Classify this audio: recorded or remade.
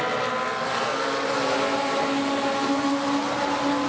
recorded